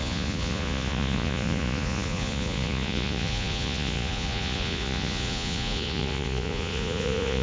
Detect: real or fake fake